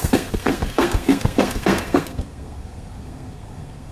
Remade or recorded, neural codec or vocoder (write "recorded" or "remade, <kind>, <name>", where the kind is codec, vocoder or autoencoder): remade, codec, SNAC